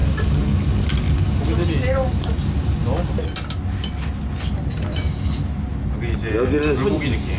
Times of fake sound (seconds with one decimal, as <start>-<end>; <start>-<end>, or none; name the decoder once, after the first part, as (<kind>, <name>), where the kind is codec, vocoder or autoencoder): none